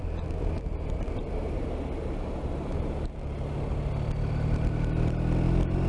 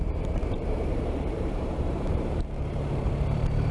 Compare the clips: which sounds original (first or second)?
first